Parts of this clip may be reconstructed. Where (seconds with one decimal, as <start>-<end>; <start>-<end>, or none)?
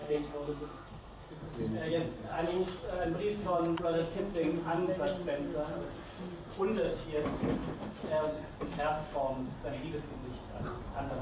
0.0-1.3